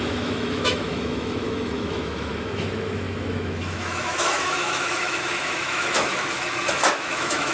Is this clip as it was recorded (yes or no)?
no